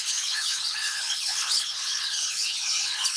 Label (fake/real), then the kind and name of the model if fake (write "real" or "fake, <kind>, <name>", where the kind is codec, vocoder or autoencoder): fake, codec, HILCodec